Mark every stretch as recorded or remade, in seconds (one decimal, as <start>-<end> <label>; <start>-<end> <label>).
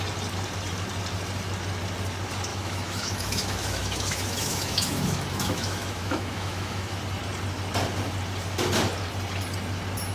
0.0-2.5 recorded; 2.5-7.0 remade; 7.0-10.1 recorded